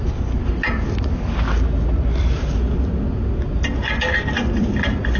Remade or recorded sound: recorded